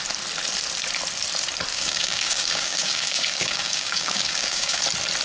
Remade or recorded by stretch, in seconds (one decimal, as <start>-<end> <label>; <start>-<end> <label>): 0.0-1.7 recorded; 1.7-4.8 remade; 4.8-5.2 recorded